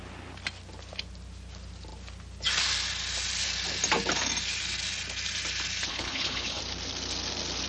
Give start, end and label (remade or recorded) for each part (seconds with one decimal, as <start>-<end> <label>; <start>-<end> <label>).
0.0-5.9 recorded; 5.9-6.6 remade; 6.6-7.7 recorded